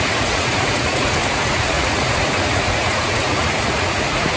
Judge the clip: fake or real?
fake